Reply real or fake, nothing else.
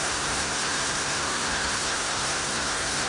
fake